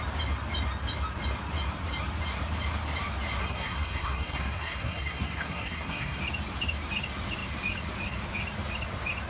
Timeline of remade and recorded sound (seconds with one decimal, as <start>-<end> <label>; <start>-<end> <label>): 0.0-3.4 recorded; 3.4-6.2 remade; 6.2-9.3 recorded